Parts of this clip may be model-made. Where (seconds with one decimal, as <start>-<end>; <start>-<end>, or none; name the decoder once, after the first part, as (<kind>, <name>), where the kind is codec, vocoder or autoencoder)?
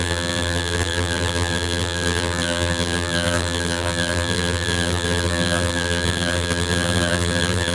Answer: 0.0-7.7 (vocoder, BigVGAN v2)